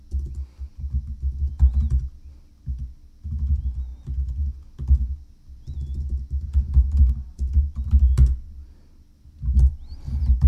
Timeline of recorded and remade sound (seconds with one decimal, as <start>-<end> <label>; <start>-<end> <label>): 0.0-10.5 recorded